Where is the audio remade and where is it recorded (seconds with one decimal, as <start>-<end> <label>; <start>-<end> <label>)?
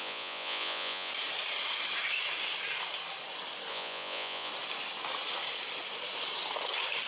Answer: 0.0-1.1 remade; 1.1-3.7 recorded; 3.7-4.5 remade; 4.5-7.1 recorded